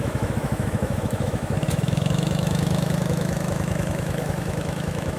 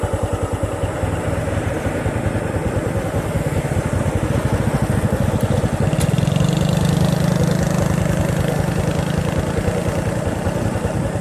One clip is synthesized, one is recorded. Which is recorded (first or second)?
second